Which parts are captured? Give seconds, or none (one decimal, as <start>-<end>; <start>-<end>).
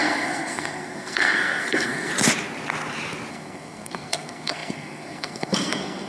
2.1-3.3